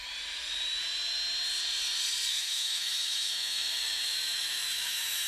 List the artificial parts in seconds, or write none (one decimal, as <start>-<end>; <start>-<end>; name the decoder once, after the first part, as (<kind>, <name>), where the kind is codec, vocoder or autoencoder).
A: 2.3-5.3 (autoencoder, DAC-VAE)

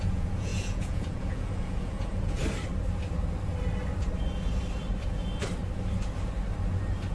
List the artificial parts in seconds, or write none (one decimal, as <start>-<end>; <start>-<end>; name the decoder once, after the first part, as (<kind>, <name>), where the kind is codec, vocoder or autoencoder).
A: 0.0-2.4 (vocoder, Vocos)

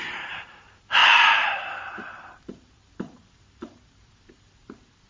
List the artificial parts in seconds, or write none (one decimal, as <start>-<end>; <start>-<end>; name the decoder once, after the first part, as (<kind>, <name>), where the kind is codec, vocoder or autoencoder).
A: 0.0-5.1 (vocoder, BigVGAN v2)